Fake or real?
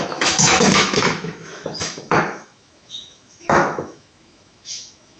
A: fake